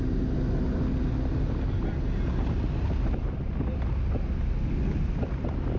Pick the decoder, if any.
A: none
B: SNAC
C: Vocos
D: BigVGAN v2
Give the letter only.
A